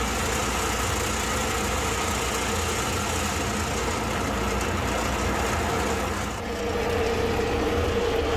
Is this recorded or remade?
recorded